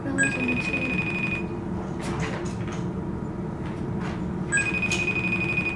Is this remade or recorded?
recorded